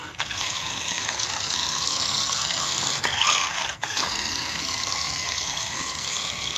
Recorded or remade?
remade